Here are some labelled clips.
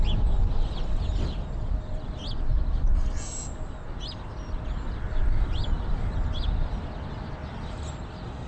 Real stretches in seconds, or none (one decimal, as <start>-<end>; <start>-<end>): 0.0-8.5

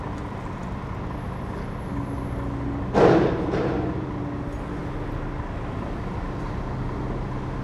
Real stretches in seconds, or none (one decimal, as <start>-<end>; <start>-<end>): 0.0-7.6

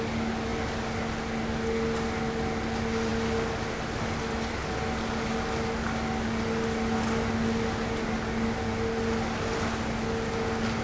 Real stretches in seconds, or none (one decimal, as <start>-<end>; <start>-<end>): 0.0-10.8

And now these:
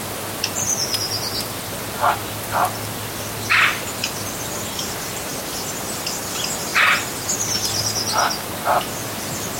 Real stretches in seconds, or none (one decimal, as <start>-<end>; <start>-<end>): 0.0-9.6

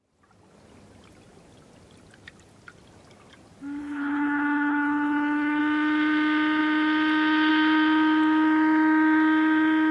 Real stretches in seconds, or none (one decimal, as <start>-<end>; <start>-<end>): 0.0-3.8; 5.6-9.9